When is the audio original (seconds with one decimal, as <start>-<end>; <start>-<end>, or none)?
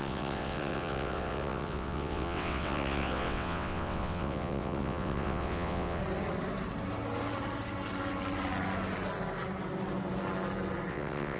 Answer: 6.0-10.9